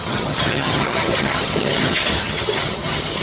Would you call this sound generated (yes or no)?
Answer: yes